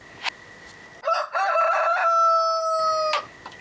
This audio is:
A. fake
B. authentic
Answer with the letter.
B